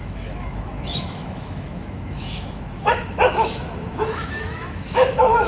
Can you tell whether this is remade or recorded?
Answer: remade